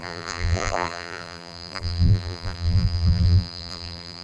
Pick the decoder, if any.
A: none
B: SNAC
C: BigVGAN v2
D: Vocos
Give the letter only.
C